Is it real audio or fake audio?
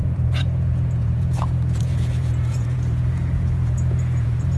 fake